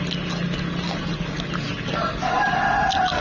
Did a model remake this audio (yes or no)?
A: no